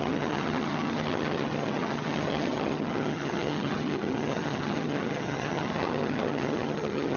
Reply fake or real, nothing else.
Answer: fake